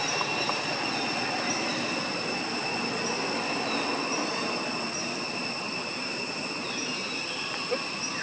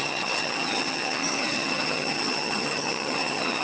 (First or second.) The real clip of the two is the first